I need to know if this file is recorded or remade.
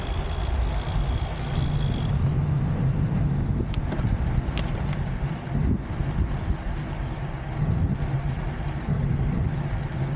recorded